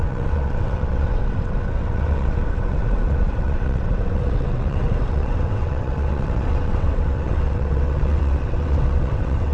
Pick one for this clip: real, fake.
fake